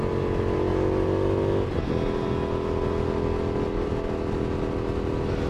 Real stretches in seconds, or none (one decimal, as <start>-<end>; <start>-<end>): 0.0-5.5